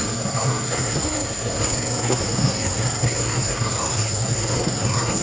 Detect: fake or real fake